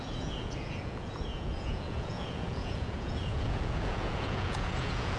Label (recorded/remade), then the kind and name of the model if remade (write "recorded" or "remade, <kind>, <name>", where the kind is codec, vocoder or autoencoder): remade, vocoder, Vocos